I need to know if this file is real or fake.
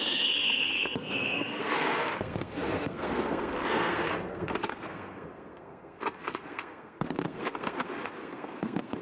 fake